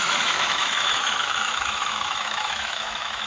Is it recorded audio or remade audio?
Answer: remade